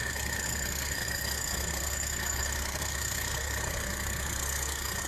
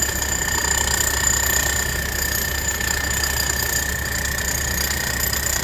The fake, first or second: first